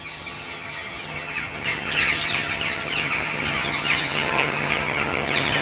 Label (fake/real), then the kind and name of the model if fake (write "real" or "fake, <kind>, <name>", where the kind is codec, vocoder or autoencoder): fake, vocoder, HiFi-GAN